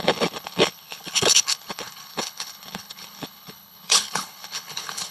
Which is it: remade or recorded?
remade